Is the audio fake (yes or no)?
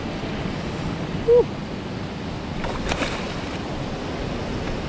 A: no